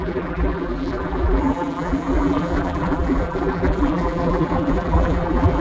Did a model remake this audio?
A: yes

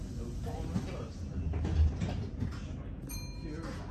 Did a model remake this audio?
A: no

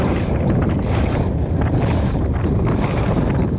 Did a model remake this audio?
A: no